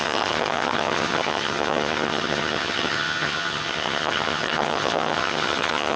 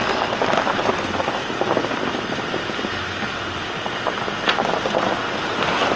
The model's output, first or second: first